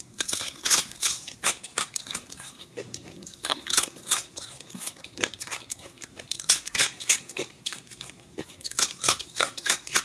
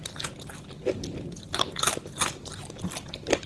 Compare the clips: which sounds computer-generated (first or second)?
first